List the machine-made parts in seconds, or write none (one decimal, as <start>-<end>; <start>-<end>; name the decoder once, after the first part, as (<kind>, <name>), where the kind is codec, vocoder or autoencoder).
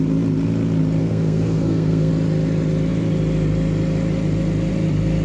1.0-2.1 (codec, SNAC)